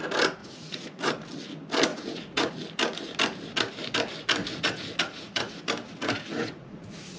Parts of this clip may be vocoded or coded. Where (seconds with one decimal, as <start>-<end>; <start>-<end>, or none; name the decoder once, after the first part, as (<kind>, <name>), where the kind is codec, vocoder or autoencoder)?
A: 0.4-1.1 (vocoder, Vocos); 1.9-2.5; 4.4-5.6; 6.0-7.2